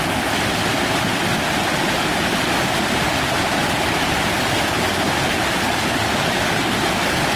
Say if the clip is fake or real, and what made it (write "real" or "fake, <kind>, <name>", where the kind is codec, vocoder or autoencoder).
real